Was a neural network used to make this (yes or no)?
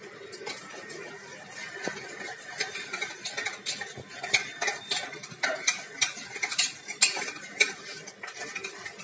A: no